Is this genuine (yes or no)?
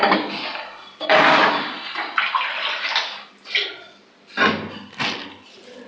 no